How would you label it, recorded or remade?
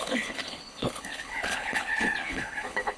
remade